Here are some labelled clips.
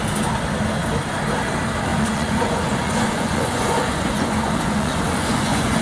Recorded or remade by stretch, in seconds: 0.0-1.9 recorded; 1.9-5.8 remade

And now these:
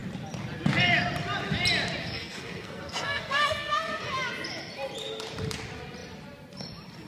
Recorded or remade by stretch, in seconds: 0.0-2.0 recorded; 2.0-4.0 remade; 4.0-7.1 recorded

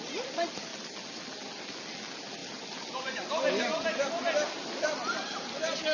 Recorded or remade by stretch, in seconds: 0.0-2.4 recorded; 2.4-3.1 remade; 3.1-5.9 recorded

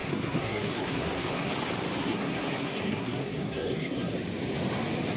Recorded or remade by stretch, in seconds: 0.0-1.5 remade; 1.5-2.0 recorded; 2.0-4.1 remade; 4.1-5.2 recorded

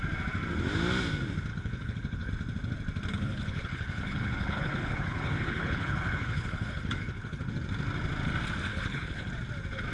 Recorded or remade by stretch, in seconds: 0.0-1.5 recorded; 1.5-2.3 remade; 2.3-3.1 recorded; 3.1-7.5 remade; 7.5-8.7 recorded; 8.7-9.3 remade; 9.3-9.9 recorded

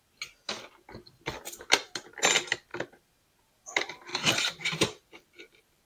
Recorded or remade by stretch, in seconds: 0.0-4.1 recorded; 4.1-5.8 remade

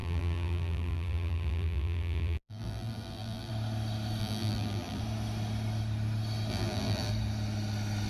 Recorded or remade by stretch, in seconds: 0.0-3.5 remade; 3.5-4.2 recorded; 4.2-5.0 remade; 5.0-6.5 recorded; 6.5-7.1 remade; 7.1-8.1 recorded